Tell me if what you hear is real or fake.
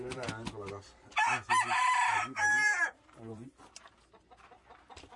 fake